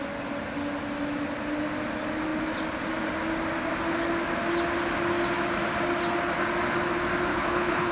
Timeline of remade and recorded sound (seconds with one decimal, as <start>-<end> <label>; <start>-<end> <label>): 0.0-7.3 recorded; 7.3-7.9 remade